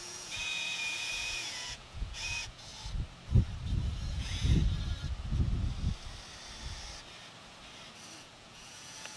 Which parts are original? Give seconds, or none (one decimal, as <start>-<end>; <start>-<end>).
2.7-4.1; 4.6-8.2